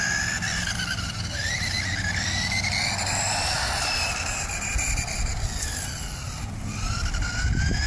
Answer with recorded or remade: recorded